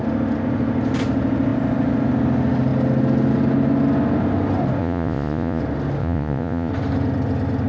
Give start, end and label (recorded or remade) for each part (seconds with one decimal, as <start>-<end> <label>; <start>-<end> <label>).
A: 0.0-4.8 recorded; 4.8-5.6 remade; 5.6-6.0 recorded; 6.0-6.7 remade; 6.7-7.7 recorded